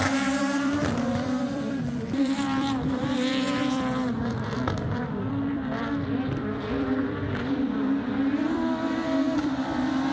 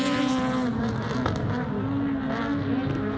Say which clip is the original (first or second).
second